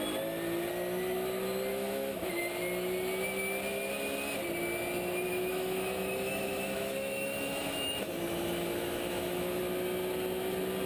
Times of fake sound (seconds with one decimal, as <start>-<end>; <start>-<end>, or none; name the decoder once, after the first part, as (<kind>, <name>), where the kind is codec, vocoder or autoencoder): 1.7-2.4 (autoencoder, DAC-VAE); 5.3-9.6

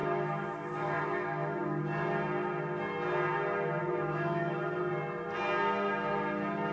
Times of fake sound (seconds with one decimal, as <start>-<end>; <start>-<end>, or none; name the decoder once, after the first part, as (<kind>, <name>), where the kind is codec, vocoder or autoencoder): 0.0-1.8 (autoencoder, DAC-VAE); 3.8-4.8

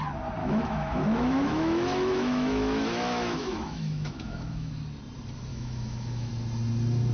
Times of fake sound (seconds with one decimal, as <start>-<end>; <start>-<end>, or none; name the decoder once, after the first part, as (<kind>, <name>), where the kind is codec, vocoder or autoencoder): 0.4-4.7 (autoencoder, DAC-VAE); 5.5-6.3

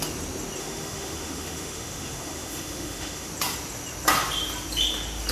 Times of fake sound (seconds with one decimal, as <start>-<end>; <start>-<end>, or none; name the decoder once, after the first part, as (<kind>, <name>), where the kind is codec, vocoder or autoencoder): 0.6-3.3 (autoencoder, DAC-VAE)

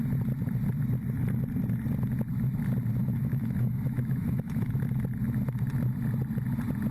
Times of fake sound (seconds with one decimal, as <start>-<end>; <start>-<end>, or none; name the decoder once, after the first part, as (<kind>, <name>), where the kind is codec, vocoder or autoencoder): 3.0-4.7 (autoencoder, DAC-VAE)

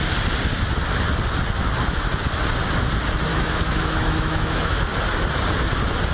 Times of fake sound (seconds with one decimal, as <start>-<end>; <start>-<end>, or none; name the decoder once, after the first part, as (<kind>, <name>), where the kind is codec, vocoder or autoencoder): 3.3-4.8 (autoencoder, DAC-VAE)